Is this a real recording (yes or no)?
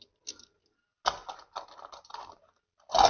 yes